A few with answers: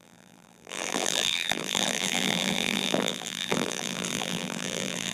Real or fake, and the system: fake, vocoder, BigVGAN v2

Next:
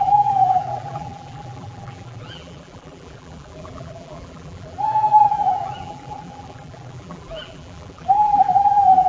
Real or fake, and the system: fake, vocoder, BigVGAN v2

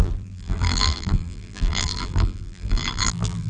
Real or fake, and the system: fake, vocoder, BigVGAN v2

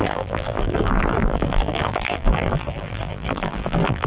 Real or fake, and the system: fake, vocoder, BigVGAN v2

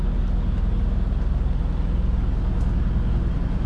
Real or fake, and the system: real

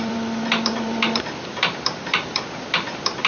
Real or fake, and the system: fake, vocoder, BigVGAN v2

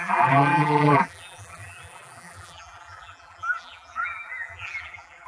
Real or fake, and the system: fake, vocoder, BigVGAN v2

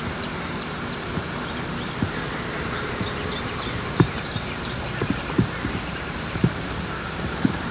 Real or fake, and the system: fake, vocoder, BigVGAN v2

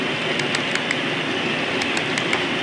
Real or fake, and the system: real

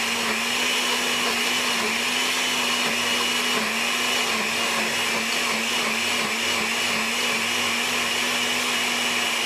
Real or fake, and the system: real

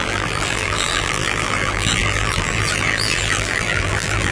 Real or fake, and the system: fake, vocoder, BigVGAN v2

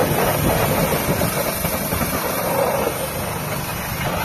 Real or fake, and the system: real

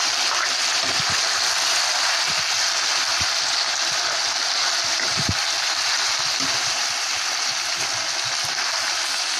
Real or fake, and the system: real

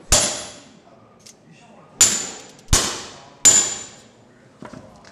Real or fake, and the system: real